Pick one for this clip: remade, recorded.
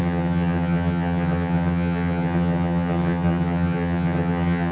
remade